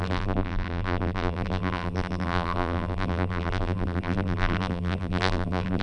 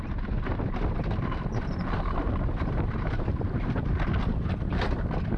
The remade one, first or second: first